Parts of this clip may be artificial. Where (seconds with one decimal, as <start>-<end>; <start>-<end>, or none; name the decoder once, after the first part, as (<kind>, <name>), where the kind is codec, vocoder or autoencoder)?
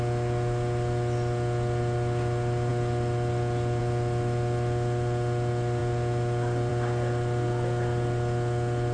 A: none